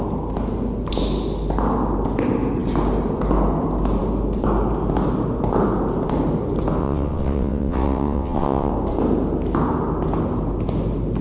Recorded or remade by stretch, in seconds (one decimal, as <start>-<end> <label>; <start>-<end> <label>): 0.0-6.8 recorded; 6.8-8.7 remade; 8.7-11.2 recorded